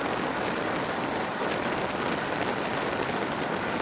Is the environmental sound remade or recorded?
recorded